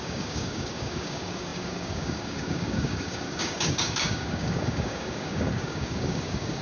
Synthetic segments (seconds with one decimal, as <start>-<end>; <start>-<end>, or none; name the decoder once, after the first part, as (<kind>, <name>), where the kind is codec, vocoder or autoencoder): 0.0-6.6 (codec, DAC)